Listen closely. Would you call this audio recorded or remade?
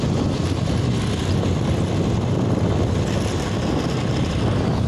recorded